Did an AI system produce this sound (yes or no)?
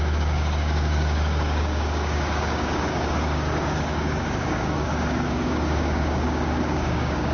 yes